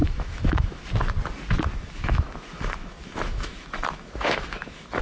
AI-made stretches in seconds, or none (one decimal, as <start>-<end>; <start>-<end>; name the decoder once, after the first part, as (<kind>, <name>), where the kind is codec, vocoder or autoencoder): 0.0-0.8 (autoencoder, DAC-VAE); 1.7-5.0